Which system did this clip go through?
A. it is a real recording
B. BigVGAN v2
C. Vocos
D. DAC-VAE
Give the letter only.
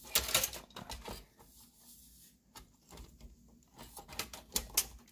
A